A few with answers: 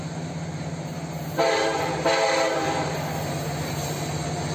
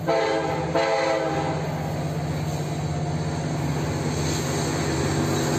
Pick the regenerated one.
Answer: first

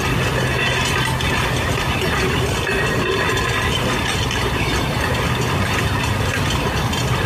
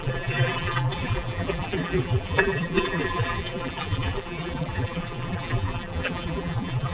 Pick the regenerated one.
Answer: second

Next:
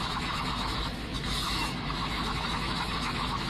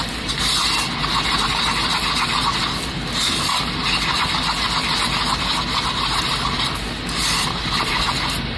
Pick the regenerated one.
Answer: first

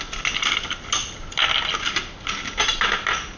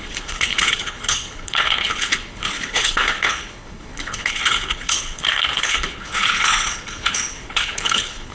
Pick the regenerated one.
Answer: second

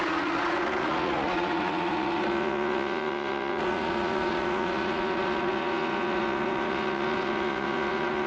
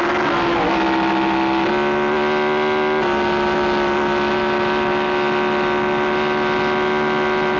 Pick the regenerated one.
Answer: first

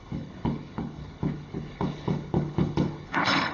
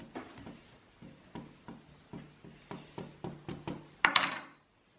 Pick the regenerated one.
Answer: first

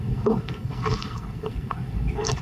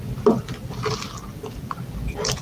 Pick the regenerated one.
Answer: first